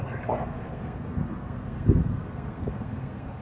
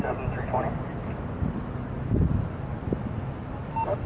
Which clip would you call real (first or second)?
second